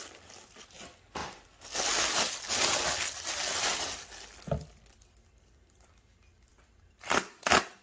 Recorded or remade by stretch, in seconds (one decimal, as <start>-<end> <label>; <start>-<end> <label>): 0.0-7.8 recorded